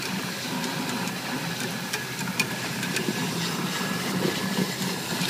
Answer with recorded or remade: recorded